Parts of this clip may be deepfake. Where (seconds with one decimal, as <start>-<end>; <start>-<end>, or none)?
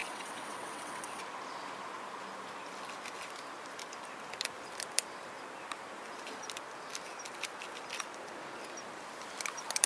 0.0-1.2